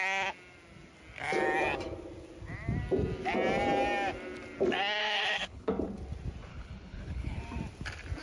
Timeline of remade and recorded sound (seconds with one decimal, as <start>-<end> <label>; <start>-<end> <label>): 0.0-5.0 recorded; 5.0-5.7 remade; 5.7-6.5 recorded; 6.5-7.4 remade; 7.4-8.2 recorded